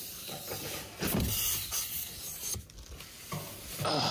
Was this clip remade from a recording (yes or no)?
no